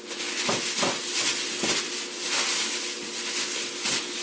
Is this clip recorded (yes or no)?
yes